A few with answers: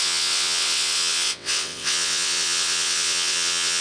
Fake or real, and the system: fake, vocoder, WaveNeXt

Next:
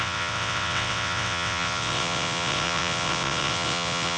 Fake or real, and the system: fake, vocoder, WaveNeXt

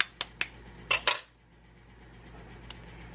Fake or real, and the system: real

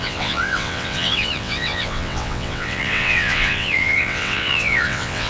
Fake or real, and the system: fake, vocoder, WaveNeXt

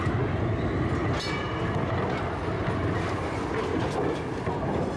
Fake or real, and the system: real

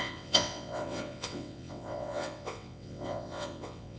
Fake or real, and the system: fake, vocoder, WaveNeXt